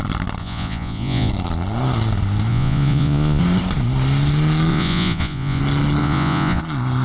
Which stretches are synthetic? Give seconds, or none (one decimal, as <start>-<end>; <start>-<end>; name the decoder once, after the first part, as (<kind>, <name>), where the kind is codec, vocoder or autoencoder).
0.4-1.3 (vocoder, Vocos); 2.5-3.4; 4.7-5.6; 6.0-6.6

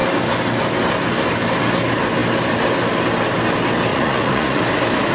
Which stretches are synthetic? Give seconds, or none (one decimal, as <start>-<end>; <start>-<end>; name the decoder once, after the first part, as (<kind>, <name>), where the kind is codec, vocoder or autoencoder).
3.9-4.6 (vocoder, Vocos)

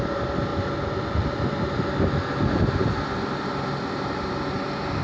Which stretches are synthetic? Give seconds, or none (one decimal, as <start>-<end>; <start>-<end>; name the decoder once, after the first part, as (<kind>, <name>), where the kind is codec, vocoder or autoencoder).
none

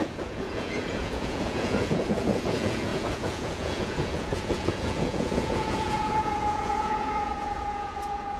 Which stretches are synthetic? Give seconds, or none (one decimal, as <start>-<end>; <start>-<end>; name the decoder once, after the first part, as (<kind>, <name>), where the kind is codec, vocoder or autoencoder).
0.0-8.4 (vocoder, Vocos)

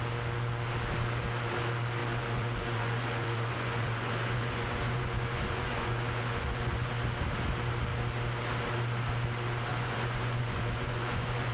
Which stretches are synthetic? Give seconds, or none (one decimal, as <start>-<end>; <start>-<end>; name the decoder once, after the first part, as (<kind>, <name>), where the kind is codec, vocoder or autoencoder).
2.0-6.9 (vocoder, Vocos); 9.7-11.5

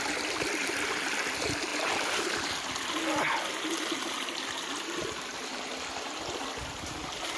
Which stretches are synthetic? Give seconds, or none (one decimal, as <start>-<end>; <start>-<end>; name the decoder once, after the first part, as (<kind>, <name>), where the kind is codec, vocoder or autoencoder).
none

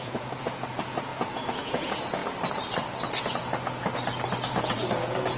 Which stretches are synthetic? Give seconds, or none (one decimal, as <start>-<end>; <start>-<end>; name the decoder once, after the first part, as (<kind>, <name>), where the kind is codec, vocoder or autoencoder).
0.0-2.2 (vocoder, Vocos); 4.5-5.4